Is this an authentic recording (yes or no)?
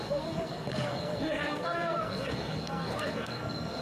no